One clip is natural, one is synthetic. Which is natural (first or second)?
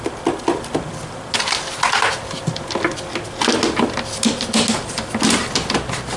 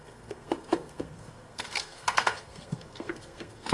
first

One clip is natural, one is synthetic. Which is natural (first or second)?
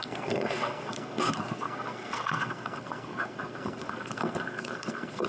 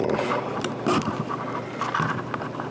second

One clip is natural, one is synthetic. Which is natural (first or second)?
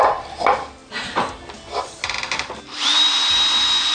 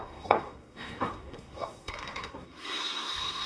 first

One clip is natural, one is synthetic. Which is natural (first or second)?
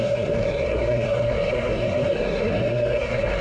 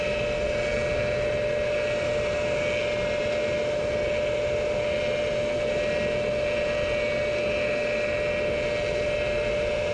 second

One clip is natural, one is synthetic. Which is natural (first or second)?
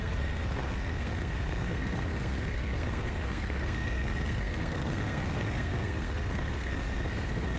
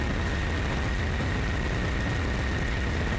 second